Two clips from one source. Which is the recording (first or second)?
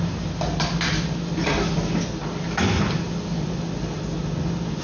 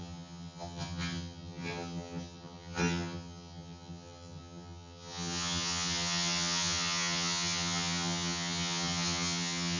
first